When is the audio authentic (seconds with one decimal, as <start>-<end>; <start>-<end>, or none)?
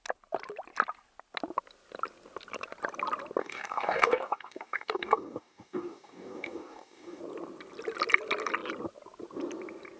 0.0-3.4; 7.2-10.0